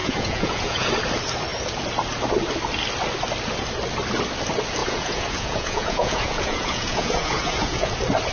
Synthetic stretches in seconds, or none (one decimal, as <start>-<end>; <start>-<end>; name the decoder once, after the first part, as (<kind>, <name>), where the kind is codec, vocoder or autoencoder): 0.0-0.9 (vocoder, Vocos); 4.8-7.9